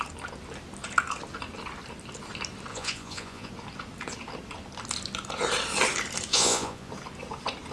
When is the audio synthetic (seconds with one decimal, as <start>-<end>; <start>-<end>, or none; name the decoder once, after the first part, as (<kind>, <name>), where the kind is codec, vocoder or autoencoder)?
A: 2.7-3.5 (vocoder, Vocos); 6.3-6.9